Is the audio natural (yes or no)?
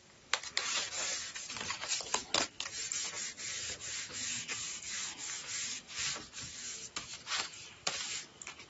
yes